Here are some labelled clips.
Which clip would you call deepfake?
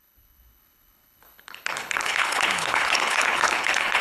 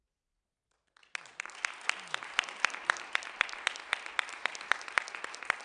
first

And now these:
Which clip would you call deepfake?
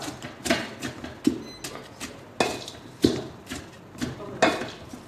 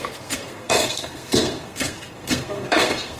second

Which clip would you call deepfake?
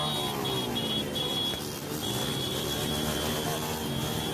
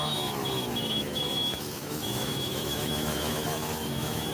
second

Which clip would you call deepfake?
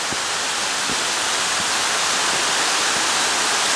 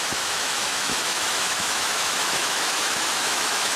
second